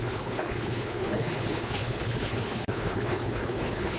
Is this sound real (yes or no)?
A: no